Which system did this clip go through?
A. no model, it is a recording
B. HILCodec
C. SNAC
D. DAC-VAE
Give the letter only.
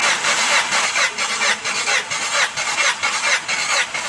A